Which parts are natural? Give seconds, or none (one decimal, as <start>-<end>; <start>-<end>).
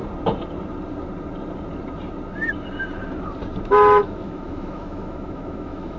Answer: 0.0-3.6